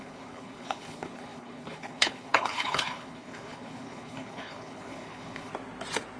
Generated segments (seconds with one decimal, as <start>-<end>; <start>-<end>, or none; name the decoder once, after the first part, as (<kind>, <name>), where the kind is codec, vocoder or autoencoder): 0.0-5.5 (codec, HILCodec)